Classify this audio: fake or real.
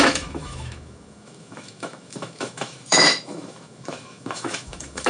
fake